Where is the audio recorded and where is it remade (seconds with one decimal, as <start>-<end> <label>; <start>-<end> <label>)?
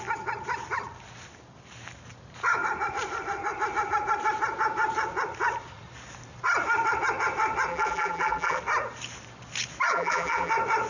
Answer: 0.0-7.7 recorded; 7.7-8.6 remade; 8.6-9.9 recorded; 9.9-10.5 remade; 10.5-10.9 recorded